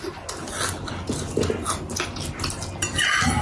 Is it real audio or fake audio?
real